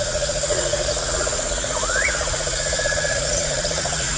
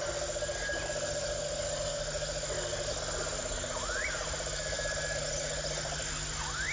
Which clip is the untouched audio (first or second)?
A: second